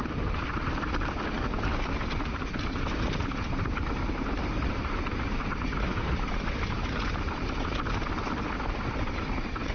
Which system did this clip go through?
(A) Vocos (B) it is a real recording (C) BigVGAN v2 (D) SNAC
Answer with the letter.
C